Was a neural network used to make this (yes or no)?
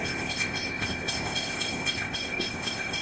yes